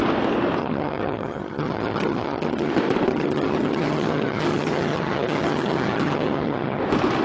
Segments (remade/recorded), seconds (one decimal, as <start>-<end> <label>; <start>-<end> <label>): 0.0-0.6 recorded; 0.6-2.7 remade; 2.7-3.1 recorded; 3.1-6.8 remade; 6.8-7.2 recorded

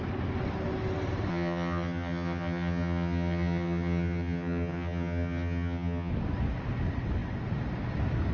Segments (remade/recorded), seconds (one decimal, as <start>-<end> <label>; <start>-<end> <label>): 0.0-1.3 recorded; 1.3-6.1 remade; 6.1-8.3 recorded

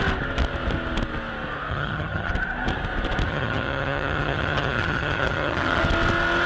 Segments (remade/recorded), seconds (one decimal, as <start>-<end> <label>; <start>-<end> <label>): 0.0-1.7 recorded; 1.7-2.3 remade; 2.3-3.3 recorded; 3.3-5.8 remade; 5.8-6.5 recorded

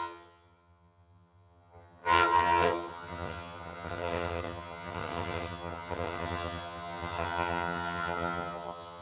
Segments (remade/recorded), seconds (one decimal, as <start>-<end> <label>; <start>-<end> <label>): 0.0-9.0 remade

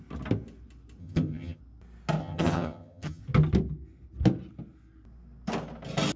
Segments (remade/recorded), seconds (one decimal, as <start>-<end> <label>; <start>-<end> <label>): 0.0-1.0 recorded; 1.0-1.6 remade; 1.6-2.2 recorded; 2.2-3.2 remade; 3.2-6.2 recorded